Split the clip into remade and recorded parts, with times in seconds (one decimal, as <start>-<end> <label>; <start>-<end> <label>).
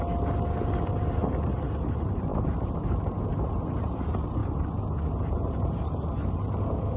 0.0-2.3 recorded; 2.3-3.5 remade; 3.5-7.0 recorded